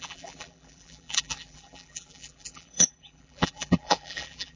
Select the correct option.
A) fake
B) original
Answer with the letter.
A